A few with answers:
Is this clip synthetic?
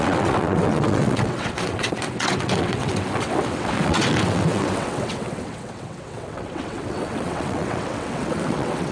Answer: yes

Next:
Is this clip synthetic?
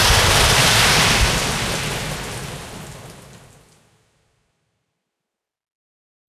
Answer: no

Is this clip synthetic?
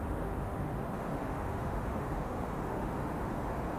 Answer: yes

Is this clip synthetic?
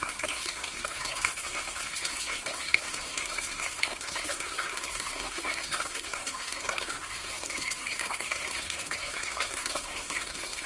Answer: yes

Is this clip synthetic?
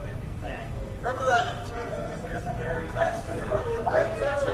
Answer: yes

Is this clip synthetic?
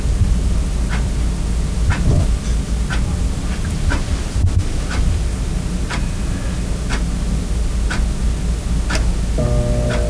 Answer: no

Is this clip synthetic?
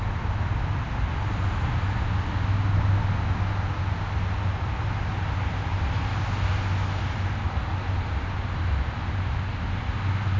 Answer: no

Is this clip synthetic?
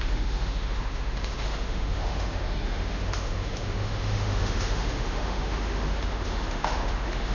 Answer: yes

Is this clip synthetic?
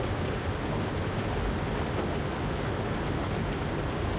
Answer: no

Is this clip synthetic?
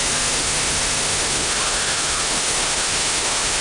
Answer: yes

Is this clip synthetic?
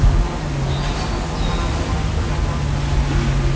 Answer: no